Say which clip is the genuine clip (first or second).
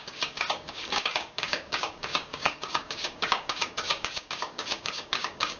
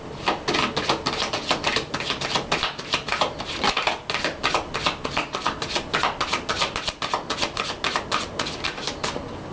second